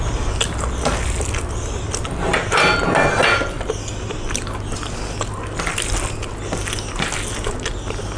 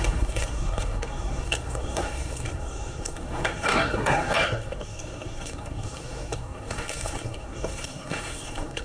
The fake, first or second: second